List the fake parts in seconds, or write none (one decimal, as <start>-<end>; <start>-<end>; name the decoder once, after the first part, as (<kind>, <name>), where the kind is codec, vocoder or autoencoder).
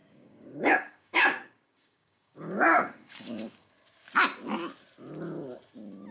0.0-3.7 (codec, DAC)